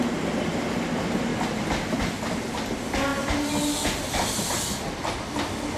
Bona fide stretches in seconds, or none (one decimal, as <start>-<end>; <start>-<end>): 0.0-5.8